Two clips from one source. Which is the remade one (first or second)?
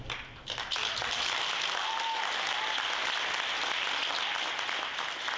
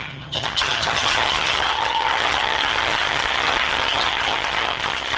second